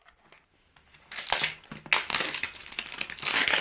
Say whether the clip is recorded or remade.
recorded